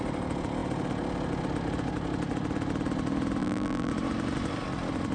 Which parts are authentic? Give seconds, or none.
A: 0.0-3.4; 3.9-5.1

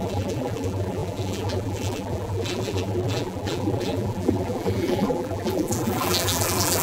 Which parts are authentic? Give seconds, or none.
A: none

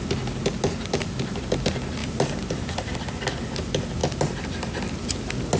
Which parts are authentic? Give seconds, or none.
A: 0.0-2.0; 3.0-5.6

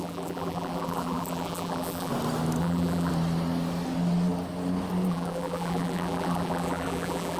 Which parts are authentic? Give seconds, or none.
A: 2.1-2.6; 3.1-5.1